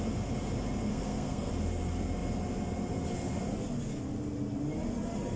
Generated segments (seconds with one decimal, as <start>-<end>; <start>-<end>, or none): 0.9-1.5

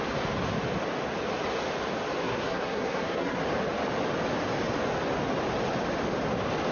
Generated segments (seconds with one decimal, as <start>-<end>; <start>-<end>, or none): 2.2-3.4

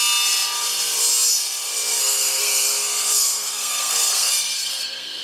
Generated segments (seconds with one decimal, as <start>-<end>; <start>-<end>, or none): 1.9-5.2

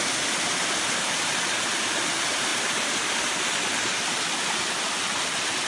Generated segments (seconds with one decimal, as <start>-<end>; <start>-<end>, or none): none

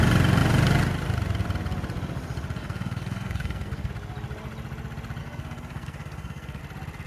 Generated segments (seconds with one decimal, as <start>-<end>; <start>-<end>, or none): 2.6-3.9; 5.2-6.6

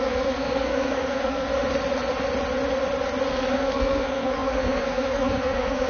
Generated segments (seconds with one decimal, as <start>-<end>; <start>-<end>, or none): 0.0-1.5; 3.3-5.9

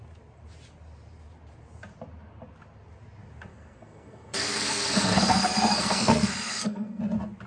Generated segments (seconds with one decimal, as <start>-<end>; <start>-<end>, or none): 3.5-7.0